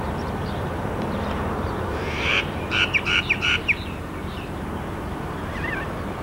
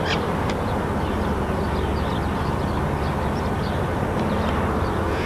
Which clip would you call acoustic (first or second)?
second